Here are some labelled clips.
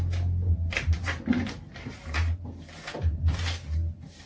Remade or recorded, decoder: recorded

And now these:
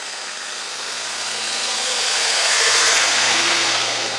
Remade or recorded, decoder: remade, codec, SNAC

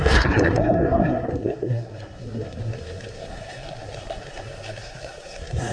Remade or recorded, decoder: remade, codec, SNAC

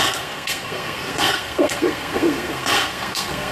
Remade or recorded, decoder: remade, codec, SNAC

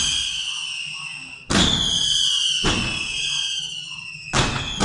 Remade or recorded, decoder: recorded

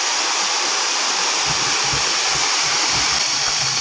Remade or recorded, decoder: recorded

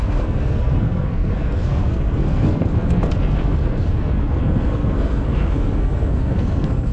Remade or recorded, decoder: remade, codec, SNAC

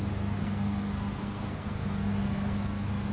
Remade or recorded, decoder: remade, codec, SNAC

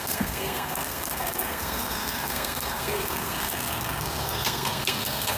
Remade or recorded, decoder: remade, codec, SNAC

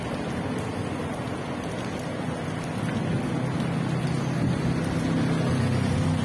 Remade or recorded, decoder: recorded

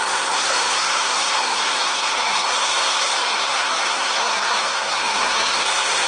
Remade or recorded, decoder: remade, codec, SNAC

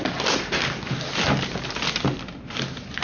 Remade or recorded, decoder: recorded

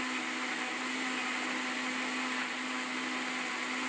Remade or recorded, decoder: recorded